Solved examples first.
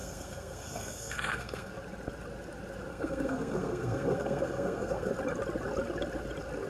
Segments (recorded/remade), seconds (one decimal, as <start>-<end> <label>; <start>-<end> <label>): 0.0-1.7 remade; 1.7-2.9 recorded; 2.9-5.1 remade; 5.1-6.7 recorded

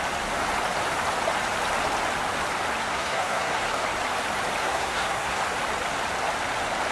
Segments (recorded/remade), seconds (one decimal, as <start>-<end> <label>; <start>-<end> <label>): 0.0-2.8 recorded; 2.8-3.8 remade; 3.8-4.6 recorded; 4.6-5.4 remade; 5.4-6.9 recorded

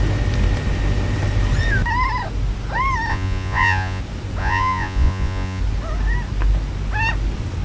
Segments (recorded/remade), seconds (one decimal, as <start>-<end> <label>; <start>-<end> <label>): 0.0-3.1 recorded; 3.1-4.0 remade; 4.0-4.4 recorded; 4.4-5.6 remade; 5.6-7.6 recorded